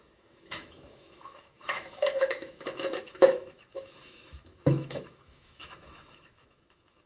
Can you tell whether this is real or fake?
fake